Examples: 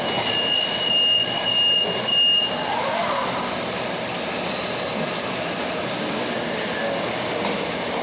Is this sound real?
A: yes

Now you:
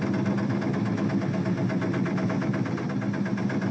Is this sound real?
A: yes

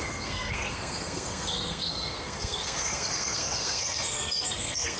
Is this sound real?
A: no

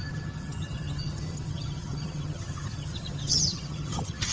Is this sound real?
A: no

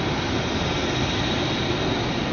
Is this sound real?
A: yes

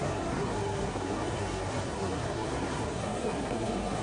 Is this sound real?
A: no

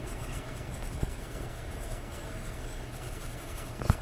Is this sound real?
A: no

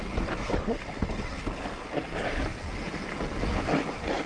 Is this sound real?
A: yes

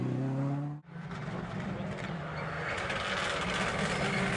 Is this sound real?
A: yes